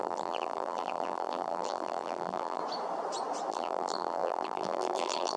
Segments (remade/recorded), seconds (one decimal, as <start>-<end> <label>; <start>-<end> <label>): 0.0-2.6 remade; 2.6-3.5 recorded; 3.5-5.4 remade